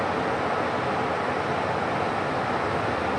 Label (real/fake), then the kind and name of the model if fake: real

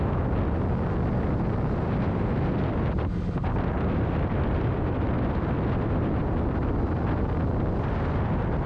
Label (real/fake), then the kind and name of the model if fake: real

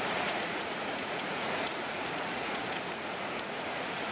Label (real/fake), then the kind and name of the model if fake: fake, vocoder, Vocos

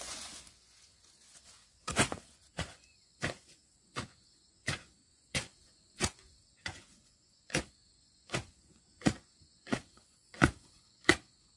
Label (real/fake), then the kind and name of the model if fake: fake, vocoder, Vocos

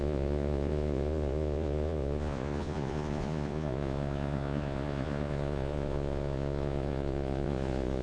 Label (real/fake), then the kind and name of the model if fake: fake, vocoder, Vocos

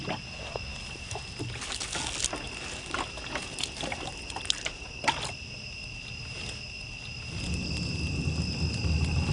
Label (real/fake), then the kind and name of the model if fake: real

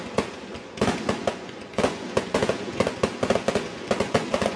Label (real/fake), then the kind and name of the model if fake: fake, vocoder, Vocos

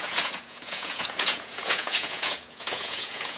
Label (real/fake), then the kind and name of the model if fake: fake, vocoder, Vocos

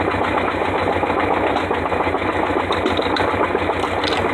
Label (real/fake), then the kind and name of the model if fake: real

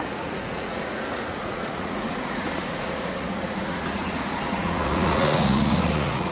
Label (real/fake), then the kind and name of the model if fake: fake, vocoder, Vocos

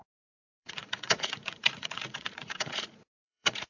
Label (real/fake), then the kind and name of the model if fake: fake, vocoder, Vocos